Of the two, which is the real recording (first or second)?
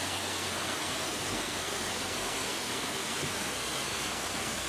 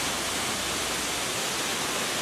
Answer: second